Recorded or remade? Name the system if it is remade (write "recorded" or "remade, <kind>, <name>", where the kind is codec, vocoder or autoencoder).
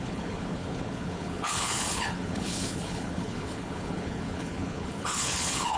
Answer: remade, codec, HILCodec